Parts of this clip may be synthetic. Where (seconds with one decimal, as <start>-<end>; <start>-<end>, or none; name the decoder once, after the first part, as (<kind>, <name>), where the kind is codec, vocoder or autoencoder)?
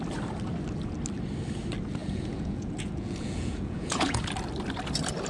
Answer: 2.0-4.2 (vocoder, Vocos)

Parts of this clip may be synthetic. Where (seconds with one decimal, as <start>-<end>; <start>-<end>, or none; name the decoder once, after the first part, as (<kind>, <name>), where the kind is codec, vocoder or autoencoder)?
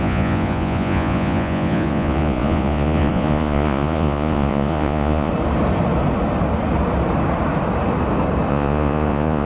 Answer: 0.0-5.3 (vocoder, Vocos); 8.5-9.5